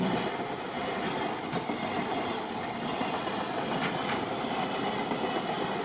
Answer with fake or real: real